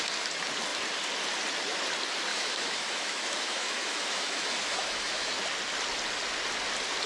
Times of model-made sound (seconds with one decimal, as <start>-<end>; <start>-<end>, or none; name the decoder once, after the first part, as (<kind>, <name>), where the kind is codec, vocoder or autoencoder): 2.3-5.3 (autoencoder, DAC-VAE)